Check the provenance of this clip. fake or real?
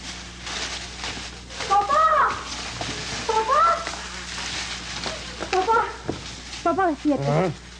real